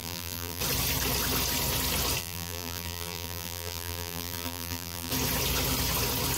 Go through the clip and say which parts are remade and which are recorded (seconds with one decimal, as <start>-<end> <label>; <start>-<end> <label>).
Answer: 0.0-0.6 remade; 0.6-2.2 recorded; 2.2-5.1 remade; 5.1-6.4 recorded